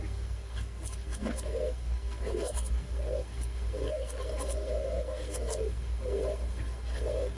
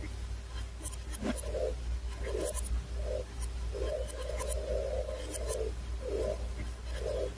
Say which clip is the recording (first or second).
second